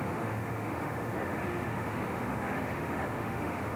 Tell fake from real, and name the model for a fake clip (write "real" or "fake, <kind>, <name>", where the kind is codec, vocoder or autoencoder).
fake, autoencoder, DAC-VAE